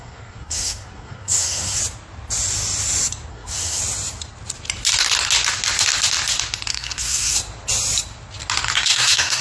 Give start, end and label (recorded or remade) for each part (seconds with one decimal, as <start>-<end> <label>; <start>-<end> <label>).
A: 0.0-1.8 remade; 1.8-3.3 recorded; 3.3-3.8 remade; 3.8-6.7 recorded; 6.7-7.4 remade; 7.4-8.8 recorded; 8.8-9.4 remade